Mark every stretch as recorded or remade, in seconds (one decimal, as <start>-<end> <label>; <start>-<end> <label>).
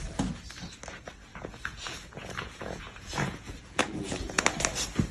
0.0-1.3 recorded; 1.3-4.4 remade; 4.4-5.1 recorded